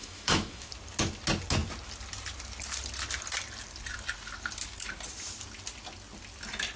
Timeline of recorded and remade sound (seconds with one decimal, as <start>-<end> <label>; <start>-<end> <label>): 0.0-0.7 remade; 0.7-6.8 recorded